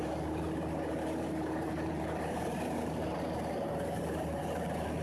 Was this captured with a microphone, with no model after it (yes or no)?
no